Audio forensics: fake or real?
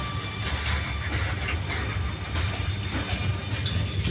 real